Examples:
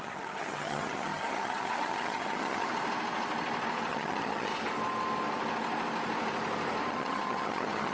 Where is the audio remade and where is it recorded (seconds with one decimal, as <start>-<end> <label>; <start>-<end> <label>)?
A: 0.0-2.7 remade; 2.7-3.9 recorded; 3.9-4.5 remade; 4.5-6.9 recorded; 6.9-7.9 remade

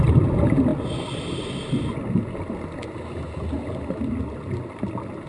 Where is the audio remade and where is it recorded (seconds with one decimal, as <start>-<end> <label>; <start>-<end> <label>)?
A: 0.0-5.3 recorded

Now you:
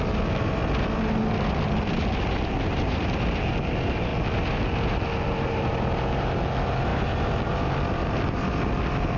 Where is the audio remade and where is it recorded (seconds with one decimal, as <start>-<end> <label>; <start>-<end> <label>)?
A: 0.0-9.2 recorded

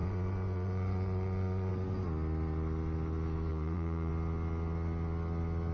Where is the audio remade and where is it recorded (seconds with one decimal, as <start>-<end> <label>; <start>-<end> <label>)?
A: 0.0-1.7 remade; 1.7-3.5 recorded; 3.5-4.1 remade; 4.1-5.7 recorded

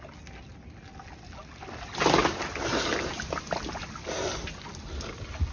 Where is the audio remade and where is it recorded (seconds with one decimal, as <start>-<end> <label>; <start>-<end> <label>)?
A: 0.0-5.5 recorded

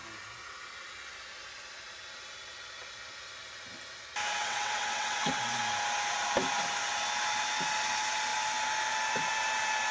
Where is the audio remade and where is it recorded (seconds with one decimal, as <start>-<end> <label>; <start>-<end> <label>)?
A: 0.0-4.4 recorded; 4.4-5.6 remade; 5.6-9.9 recorded

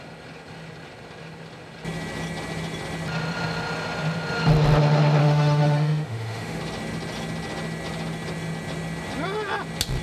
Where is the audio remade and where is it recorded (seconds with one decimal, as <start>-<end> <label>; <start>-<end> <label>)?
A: 0.0-5.2 recorded; 5.2-6.6 remade; 6.6-10.0 recorded

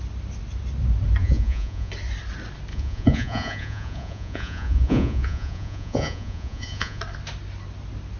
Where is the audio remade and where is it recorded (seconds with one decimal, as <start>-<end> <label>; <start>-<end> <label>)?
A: 0.0-1.2 recorded; 1.2-1.9 remade; 1.9-2.7 recorded; 2.7-7.0 remade; 7.0-8.2 recorded